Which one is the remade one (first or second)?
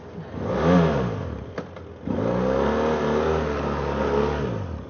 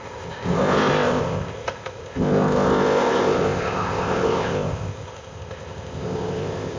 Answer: second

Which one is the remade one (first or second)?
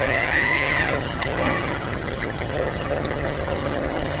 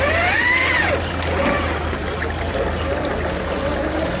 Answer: first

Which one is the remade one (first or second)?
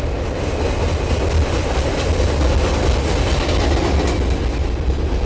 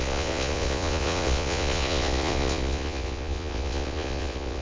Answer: second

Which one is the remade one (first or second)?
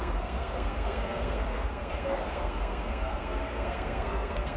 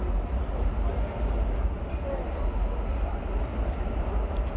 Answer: first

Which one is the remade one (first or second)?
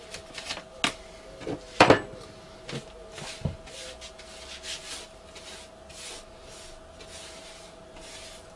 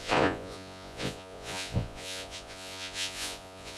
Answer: second